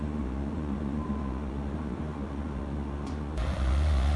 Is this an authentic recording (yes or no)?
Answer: no